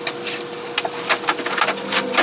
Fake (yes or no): no